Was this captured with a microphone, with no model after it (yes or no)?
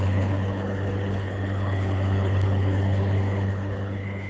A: no